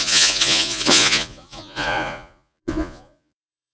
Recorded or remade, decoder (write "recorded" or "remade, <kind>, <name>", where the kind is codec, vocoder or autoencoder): remade, vocoder, Vocos